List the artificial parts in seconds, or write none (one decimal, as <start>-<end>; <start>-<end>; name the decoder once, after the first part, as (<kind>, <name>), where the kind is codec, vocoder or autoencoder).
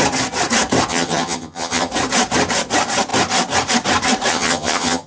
0.9-1.9 (vocoder, HiFi-GAN); 4.3-5.1